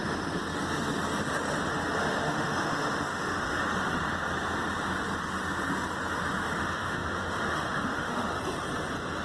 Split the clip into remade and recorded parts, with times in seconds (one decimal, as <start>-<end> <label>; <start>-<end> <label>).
0.0-2.0 recorded; 2.0-3.6 remade; 3.6-6.6 recorded; 6.6-8.3 remade; 8.3-9.2 recorded